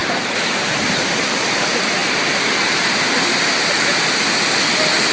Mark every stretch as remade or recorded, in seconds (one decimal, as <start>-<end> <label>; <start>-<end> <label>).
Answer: 0.0-5.1 recorded